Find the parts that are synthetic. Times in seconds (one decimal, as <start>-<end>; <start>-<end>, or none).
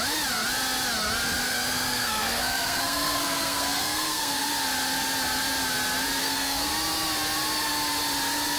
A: 1.5-4.5; 6.2-6.7